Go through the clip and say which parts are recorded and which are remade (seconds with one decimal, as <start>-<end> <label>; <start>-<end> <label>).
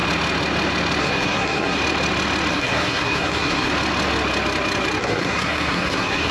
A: 0.0-1.0 recorded; 1.0-1.8 remade; 1.8-2.5 recorded; 2.5-3.7 remade; 3.7-5.0 recorded; 5.0-6.3 remade